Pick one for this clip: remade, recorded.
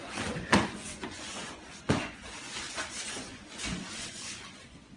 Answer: remade